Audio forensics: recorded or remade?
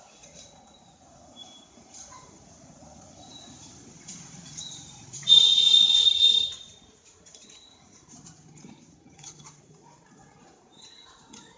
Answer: remade